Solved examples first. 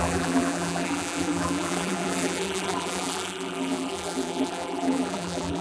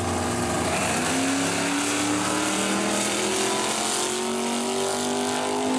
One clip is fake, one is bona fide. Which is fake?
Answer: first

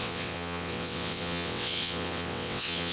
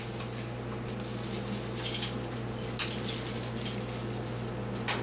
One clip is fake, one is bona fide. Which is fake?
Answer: first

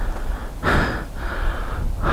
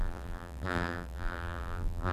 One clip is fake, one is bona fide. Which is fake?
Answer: second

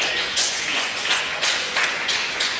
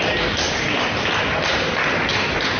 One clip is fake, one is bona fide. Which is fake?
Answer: first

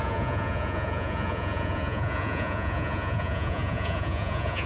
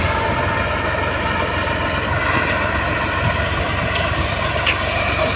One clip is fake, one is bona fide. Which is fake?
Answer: first